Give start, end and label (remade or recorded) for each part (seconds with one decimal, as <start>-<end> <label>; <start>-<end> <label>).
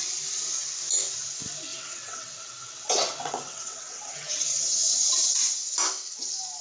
0.0-1.7 recorded; 1.7-5.7 remade; 5.7-6.6 recorded